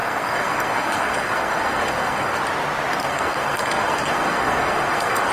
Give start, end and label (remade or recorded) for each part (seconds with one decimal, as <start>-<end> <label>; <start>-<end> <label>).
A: 0.0-2.4 remade; 2.4-3.0 recorded; 3.0-5.3 remade